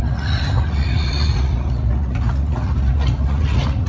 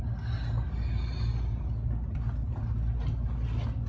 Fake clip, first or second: first